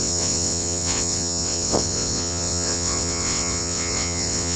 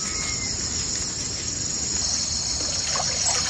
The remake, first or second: first